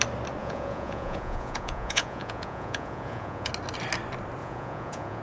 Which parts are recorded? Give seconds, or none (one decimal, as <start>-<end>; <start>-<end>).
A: 0.0-0.4; 3.5-4.4